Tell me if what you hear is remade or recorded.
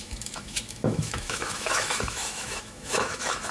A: remade